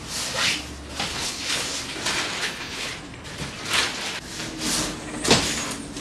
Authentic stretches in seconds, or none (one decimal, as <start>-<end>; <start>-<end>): 0.0-1.1; 1.6-2.4; 2.9-6.0